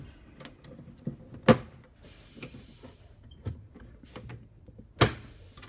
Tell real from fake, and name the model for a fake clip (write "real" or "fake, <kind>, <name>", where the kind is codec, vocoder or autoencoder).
real